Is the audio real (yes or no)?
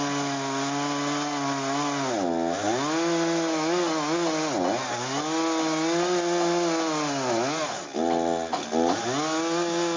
yes